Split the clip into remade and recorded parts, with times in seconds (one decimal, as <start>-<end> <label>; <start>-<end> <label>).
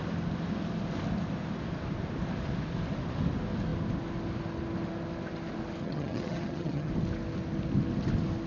0.0-5.8 recorded; 5.8-6.9 remade; 6.9-8.5 recorded